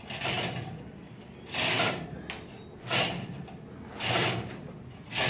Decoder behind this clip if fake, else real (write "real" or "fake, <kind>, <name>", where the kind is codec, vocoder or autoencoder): real